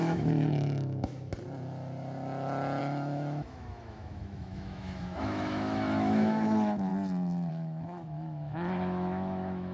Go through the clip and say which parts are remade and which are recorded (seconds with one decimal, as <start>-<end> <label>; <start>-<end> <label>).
0.0-1.3 remade; 1.3-2.8 recorded; 2.8-6.9 remade; 6.9-7.5 recorded; 7.5-9.7 remade